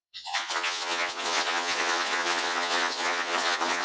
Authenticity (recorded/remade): remade